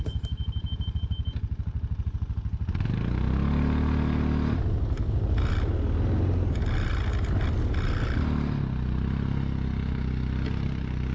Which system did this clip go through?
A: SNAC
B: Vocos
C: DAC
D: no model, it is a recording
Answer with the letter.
D